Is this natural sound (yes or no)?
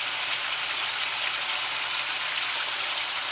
yes